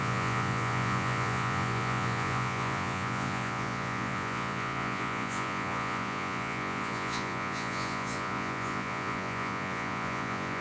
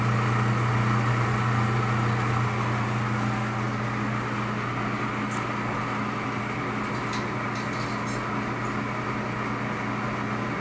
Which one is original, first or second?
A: second